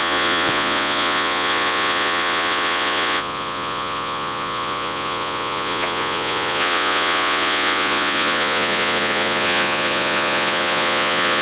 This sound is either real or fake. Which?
fake